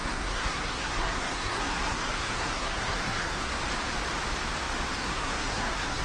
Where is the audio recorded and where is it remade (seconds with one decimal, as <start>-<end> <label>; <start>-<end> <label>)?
0.0-3.6 remade; 3.6-5.0 recorded; 5.0-6.0 remade